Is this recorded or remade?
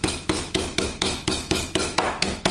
remade